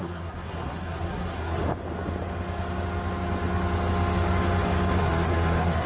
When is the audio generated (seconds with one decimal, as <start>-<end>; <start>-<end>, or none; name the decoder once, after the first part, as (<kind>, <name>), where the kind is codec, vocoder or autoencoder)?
0.0-1.6 (codec, SNAC); 5.0-5.9